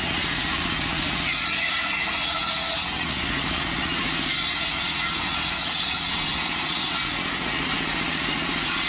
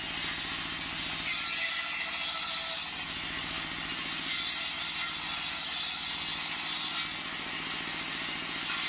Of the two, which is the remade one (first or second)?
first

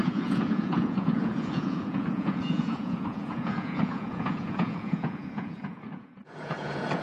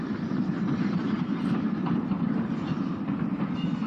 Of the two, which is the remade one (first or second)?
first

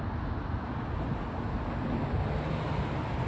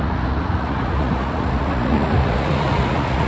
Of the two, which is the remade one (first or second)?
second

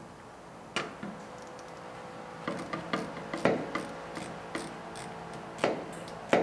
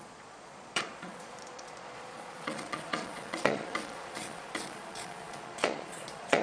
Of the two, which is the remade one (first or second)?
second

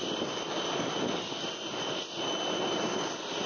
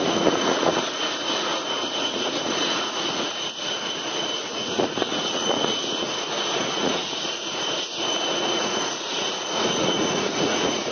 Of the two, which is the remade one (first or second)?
second